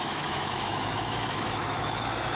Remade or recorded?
remade